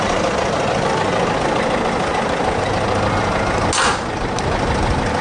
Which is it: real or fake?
real